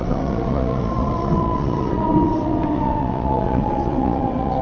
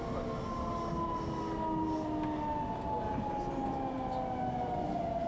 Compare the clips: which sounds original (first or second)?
second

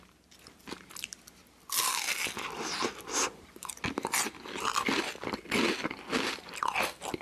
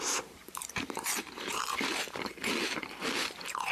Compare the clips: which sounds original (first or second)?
first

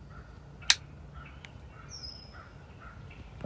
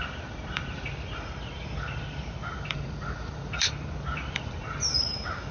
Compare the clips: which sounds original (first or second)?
first